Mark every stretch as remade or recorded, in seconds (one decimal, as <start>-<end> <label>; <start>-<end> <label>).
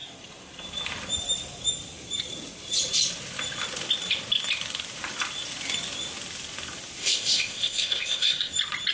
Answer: 0.0-7.0 recorded; 7.0-8.5 remade; 8.5-8.9 recorded